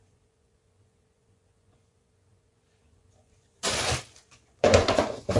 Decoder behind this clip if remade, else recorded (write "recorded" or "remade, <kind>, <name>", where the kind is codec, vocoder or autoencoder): remade, vocoder, Vocos